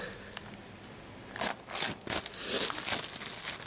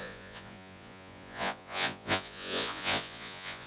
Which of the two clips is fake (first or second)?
second